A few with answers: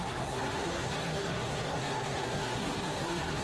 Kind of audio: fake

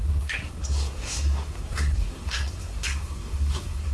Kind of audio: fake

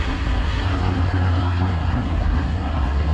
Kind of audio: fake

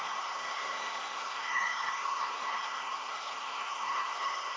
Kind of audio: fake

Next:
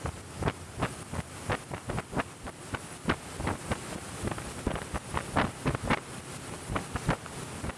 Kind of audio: real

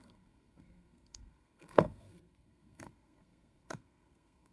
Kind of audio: fake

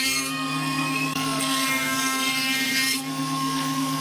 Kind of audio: fake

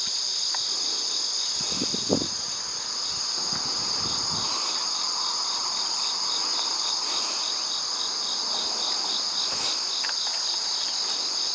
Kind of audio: real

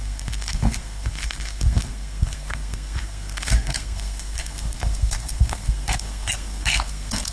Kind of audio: fake